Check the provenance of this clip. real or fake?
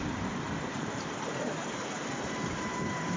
fake